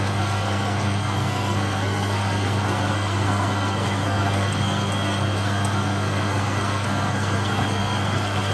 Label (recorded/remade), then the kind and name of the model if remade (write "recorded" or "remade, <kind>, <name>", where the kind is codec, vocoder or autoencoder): remade, codec, SNAC